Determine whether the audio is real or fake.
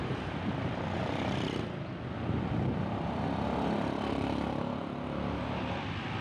real